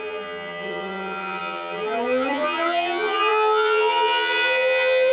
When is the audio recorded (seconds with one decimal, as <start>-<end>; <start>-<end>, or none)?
none